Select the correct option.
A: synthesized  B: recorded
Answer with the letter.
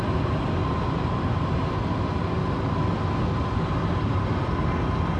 B